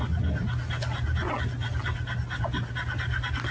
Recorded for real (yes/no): yes